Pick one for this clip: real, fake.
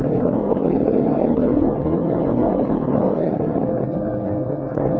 fake